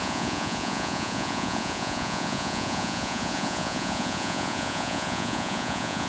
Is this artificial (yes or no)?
yes